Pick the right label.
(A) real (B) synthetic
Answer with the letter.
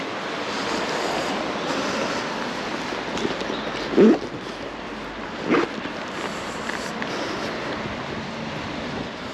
A